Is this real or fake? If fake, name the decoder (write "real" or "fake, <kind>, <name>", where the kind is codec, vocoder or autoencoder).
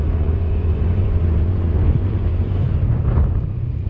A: fake, vocoder, Vocos